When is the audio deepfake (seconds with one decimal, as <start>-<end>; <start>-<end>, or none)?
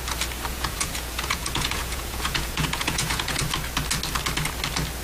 0.5-3.4